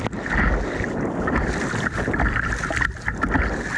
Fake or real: real